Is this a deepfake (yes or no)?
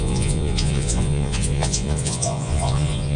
yes